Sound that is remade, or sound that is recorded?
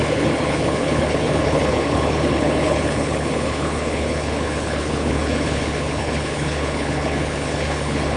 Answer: remade